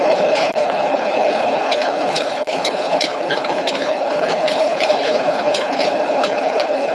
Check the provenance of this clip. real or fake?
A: fake